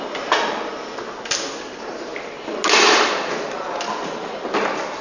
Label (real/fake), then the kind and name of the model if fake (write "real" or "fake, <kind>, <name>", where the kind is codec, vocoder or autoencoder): real